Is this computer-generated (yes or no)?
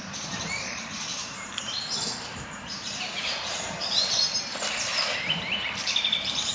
yes